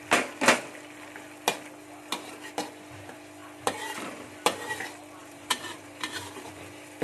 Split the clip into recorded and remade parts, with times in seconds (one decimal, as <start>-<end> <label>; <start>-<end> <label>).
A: 0.0-5.2 recorded; 5.2-6.5 remade; 6.5-7.0 recorded